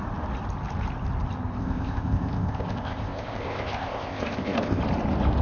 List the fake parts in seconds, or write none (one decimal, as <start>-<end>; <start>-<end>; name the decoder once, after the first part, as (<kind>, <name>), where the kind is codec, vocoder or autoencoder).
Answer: 1.6-4.8 (codec, ZipCodec)